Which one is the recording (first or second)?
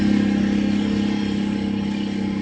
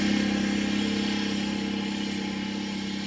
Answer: second